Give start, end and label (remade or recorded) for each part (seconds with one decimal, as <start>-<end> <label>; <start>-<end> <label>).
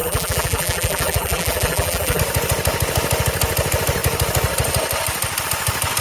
0.0-2.2 remade; 2.2-6.0 recorded